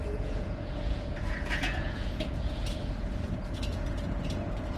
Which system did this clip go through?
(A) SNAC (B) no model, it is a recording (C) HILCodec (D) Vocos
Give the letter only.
D